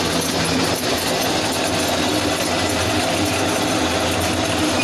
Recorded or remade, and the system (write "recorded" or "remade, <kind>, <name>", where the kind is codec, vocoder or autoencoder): recorded